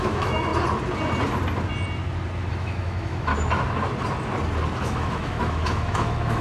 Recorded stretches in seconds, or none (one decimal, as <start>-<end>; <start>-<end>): 0.5-2.5; 3.3-4.8